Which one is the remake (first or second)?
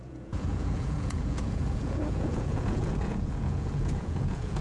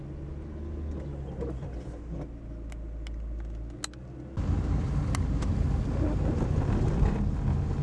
first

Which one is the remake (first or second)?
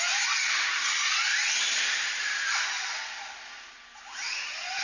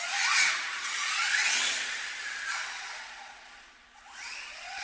second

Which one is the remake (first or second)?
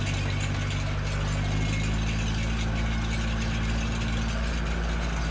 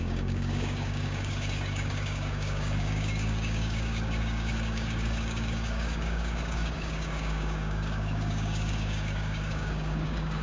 second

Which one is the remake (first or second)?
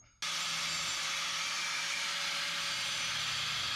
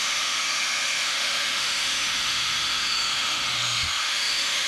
second